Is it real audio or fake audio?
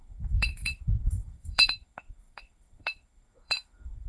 fake